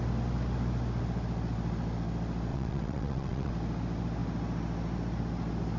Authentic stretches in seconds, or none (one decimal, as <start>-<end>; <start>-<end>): 0.0-2.5; 3.5-5.8